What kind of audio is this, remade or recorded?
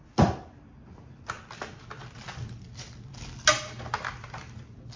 recorded